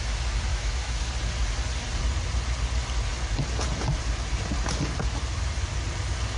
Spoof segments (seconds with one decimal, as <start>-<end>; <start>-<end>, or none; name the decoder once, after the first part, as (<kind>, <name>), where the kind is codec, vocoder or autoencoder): 0.5-1.1 (autoencoder, DAC-VAE)